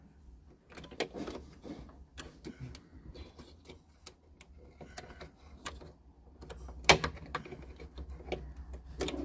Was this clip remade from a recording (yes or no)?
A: no